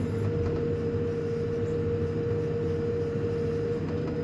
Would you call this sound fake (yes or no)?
no